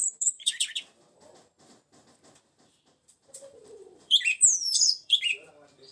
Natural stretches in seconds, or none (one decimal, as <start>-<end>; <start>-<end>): 0.7-3.0; 5.5-5.9